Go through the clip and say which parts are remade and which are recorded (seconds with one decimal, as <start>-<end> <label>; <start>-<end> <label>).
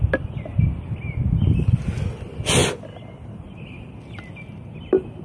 0.0-5.2 recorded